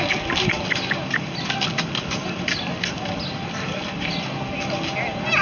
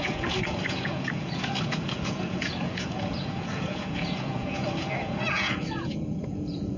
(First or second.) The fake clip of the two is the second